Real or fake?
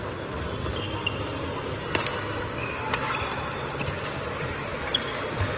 real